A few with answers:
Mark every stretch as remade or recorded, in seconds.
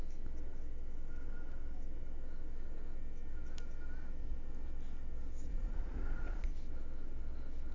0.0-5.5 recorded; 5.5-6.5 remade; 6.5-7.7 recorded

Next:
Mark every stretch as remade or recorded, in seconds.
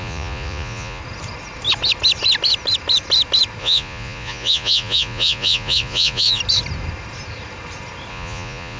0.0-1.0 remade; 1.0-3.6 recorded; 3.6-6.4 remade; 6.4-8.1 recorded; 8.1-8.8 remade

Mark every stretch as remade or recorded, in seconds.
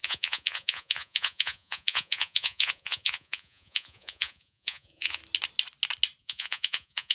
0.0-5.2 remade; 5.2-6.2 recorded; 6.2-7.1 remade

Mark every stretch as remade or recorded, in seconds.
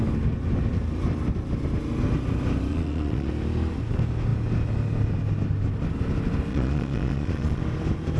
0.0-2.7 recorded; 2.7-3.3 remade; 3.3-6.5 recorded; 6.5-7.6 remade; 7.6-8.2 recorded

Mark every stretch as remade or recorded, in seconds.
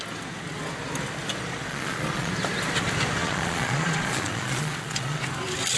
0.0-1.7 recorded; 1.7-2.3 remade; 2.3-3.2 recorded; 3.2-5.2 remade; 5.2-5.8 recorded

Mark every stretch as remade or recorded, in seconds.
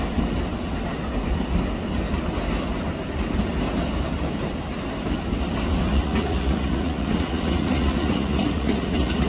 0.0-5.9 recorded; 5.9-9.3 remade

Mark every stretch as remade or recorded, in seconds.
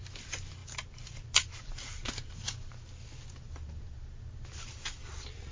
0.0-5.5 recorded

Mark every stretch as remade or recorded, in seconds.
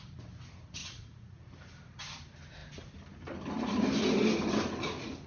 0.0-0.8 recorded; 0.8-1.4 remade; 1.4-5.3 recorded